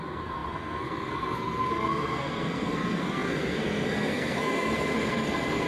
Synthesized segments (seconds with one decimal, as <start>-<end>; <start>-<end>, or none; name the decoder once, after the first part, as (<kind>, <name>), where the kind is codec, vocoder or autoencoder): 0.0-5.7 (codec, SNAC)

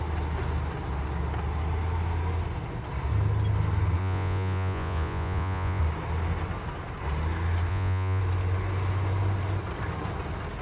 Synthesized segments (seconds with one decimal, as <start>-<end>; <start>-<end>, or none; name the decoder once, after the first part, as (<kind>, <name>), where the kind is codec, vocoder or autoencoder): 4.0-5.8 (vocoder, Vocos); 7.7-8.2

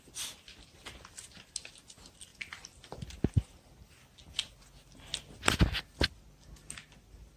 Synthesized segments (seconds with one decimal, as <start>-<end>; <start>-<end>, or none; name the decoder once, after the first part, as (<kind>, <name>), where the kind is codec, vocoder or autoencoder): none

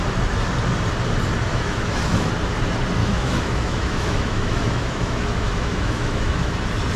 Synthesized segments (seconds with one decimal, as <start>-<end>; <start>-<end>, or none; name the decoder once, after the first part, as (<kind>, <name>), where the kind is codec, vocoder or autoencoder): 1.5-2.3 (autoencoder, DAC-VAE); 3.0-6.5